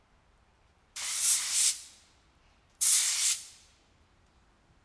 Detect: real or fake fake